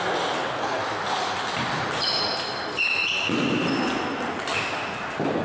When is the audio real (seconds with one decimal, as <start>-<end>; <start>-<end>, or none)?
0.0-5.4